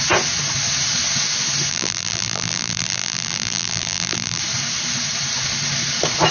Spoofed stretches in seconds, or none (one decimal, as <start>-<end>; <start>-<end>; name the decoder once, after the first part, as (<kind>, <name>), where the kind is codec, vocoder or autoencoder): 1.7-4.4 (vocoder, BigVGAN v2)